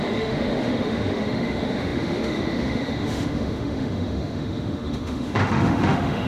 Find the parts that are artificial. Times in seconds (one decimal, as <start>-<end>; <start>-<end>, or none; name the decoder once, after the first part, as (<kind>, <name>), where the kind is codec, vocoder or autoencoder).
0.0-6.3 (autoencoder, DAC-VAE)